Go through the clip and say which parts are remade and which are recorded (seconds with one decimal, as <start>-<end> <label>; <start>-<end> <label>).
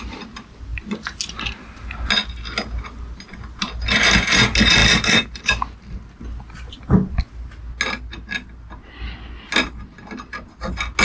0.0-11.0 recorded